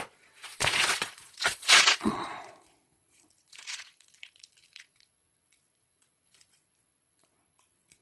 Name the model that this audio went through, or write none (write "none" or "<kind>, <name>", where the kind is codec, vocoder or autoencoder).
vocoder, Vocos